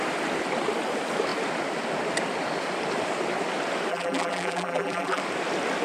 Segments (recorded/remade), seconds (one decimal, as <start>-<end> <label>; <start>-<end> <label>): 0.0-3.9 recorded; 3.9-5.2 remade; 5.2-5.8 recorded

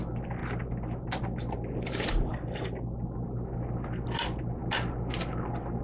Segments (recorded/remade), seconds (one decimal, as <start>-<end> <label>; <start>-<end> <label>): 0.0-5.8 recorded

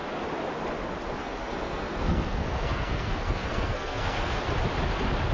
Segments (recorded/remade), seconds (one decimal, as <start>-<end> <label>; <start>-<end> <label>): 0.0-1.2 recorded; 1.2-4.4 remade; 4.4-5.3 recorded